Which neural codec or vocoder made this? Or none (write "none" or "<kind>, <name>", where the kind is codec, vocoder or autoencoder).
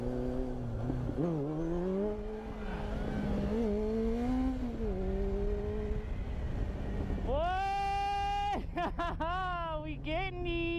none